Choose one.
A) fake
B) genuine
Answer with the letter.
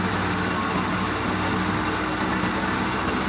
B